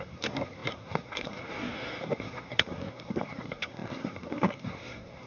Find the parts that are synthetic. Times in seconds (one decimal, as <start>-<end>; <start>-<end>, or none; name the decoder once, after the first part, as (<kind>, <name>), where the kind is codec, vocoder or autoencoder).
0.0-5.3 (codec, SNAC)